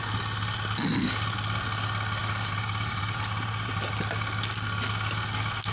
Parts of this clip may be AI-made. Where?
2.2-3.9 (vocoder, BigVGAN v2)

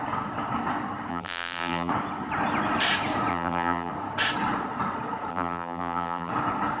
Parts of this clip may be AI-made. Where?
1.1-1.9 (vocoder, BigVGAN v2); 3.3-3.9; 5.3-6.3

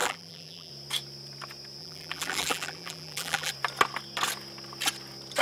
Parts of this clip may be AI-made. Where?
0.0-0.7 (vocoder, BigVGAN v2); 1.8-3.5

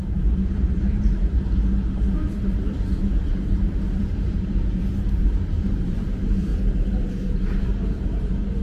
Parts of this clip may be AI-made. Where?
0.0-6.5 (vocoder, BigVGAN v2); 7.1-8.6

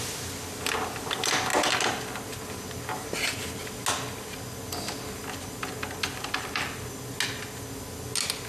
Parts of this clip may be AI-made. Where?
none

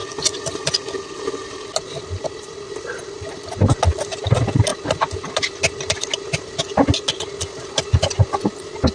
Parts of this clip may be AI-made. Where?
0.0-4.3 (vocoder, BigVGAN v2); 4.7-5.3